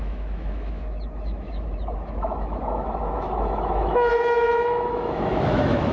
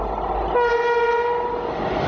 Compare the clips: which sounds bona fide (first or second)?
second